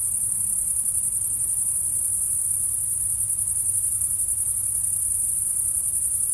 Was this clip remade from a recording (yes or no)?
no